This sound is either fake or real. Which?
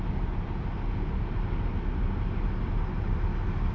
real